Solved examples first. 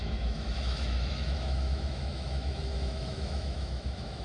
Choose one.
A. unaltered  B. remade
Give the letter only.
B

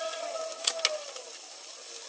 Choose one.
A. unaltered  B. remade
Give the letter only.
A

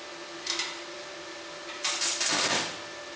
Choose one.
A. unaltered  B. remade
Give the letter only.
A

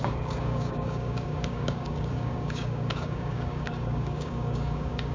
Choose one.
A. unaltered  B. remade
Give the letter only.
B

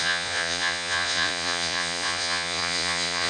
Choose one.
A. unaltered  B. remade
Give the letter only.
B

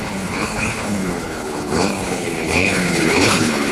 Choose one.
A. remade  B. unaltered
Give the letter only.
A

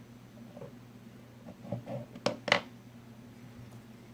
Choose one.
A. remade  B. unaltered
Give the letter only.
B